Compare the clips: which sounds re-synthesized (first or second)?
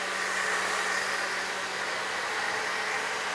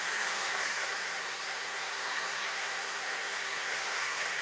second